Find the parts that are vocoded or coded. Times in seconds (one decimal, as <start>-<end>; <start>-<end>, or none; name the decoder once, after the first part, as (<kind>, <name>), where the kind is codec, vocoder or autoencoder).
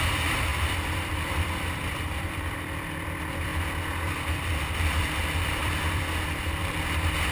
0.0-3.5 (vocoder, BigVGAN v2); 4.8-7.3